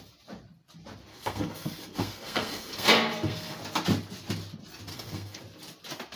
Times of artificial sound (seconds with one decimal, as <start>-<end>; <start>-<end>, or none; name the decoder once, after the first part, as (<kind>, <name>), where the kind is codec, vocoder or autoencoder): 1.1-3.6 (codec, SNAC); 4.9-5.4